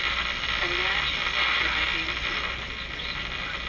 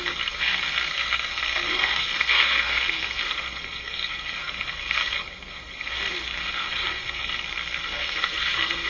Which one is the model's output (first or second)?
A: second